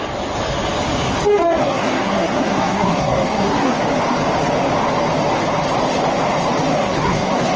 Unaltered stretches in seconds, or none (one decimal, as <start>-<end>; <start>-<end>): 0.0-1.6; 3.8-6.7